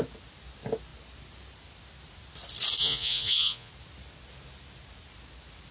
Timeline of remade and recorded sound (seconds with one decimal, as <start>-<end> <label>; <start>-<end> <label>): 0.0-2.8 recorded; 2.8-3.7 remade; 3.7-5.7 recorded